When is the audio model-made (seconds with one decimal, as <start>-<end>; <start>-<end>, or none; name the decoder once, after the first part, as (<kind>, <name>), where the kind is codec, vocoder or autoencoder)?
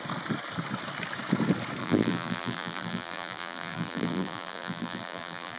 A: 1.8-5.6 (vocoder, BigVGAN v2)